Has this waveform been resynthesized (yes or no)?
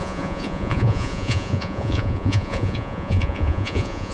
yes